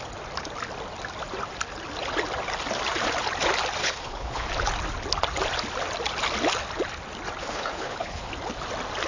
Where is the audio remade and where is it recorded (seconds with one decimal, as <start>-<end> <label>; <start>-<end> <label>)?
0.0-3.8 recorded; 3.8-4.5 remade; 4.5-7.4 recorded; 7.4-8.3 remade; 8.3-9.1 recorded